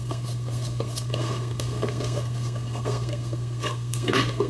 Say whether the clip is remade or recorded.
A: remade